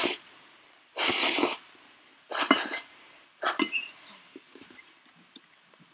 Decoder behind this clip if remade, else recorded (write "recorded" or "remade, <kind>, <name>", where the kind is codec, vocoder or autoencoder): remade, vocoder, BigVGAN v2